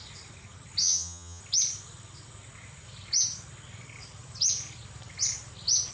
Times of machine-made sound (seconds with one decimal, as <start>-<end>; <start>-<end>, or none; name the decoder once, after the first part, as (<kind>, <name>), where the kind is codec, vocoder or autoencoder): 0.8-1.4 (vocoder, HiFi-GAN)